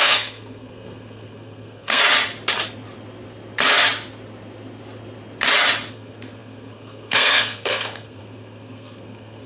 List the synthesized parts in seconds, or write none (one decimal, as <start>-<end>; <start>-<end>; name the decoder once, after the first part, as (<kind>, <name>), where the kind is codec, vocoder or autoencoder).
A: 0.0-2.0 (codec, SNAC); 5.9-9.5